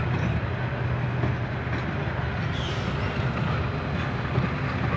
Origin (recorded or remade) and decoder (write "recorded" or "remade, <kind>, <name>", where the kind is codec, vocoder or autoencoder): recorded